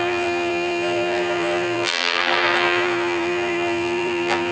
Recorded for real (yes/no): no